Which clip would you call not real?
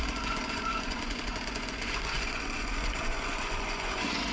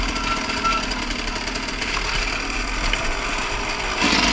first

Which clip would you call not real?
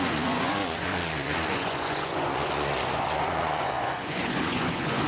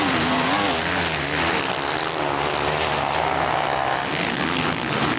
first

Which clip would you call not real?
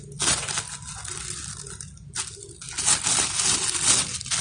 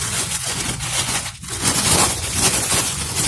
second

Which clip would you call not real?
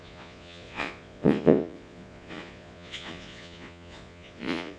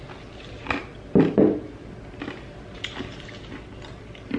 first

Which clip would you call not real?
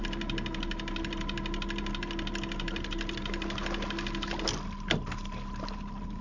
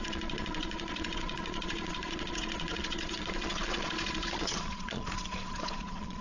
second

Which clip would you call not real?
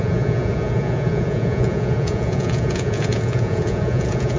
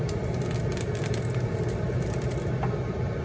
first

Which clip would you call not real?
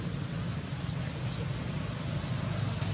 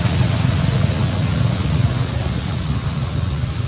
second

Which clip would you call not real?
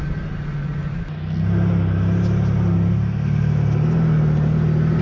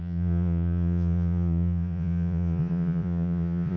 second